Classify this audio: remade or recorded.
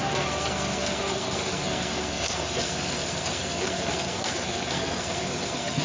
remade